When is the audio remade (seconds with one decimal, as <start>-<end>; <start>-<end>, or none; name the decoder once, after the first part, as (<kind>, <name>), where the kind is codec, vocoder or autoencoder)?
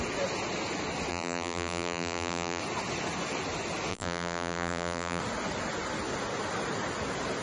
1.1-2.6 (vocoder, BigVGAN v2); 3.9-5.2